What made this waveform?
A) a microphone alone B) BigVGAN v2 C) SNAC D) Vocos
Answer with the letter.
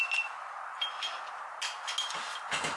A